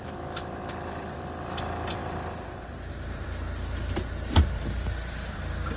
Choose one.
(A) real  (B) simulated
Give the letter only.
B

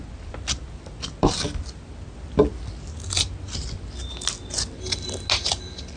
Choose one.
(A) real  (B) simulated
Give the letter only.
A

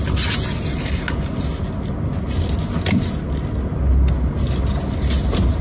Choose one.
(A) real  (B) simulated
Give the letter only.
A